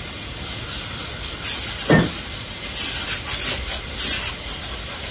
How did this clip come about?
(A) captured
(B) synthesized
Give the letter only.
A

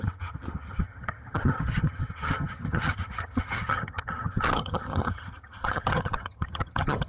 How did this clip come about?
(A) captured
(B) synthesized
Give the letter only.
B